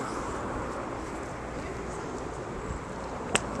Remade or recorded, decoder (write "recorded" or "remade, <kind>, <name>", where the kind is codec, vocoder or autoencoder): recorded